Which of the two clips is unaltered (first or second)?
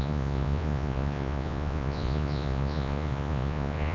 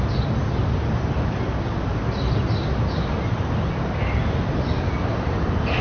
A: second